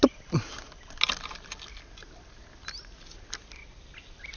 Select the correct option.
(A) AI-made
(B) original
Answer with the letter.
B